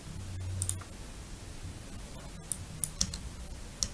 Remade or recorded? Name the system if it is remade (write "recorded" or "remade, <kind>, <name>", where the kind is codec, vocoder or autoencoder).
recorded